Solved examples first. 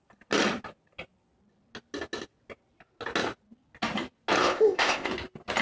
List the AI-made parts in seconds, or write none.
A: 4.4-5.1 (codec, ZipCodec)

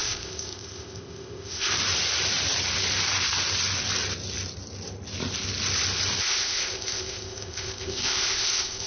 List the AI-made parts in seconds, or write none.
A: 0.0-1.7 (codec, ZipCodec); 6.2-8.9